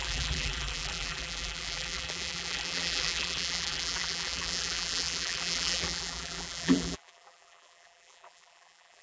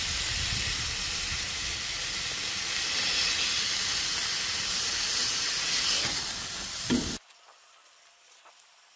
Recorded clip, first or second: second